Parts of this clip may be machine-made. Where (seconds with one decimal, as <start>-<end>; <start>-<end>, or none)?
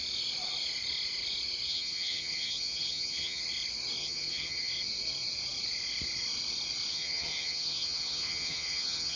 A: 1.7-3.4; 4.0-4.7; 6.9-9.2